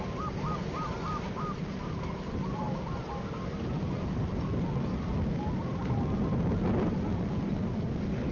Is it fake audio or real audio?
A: real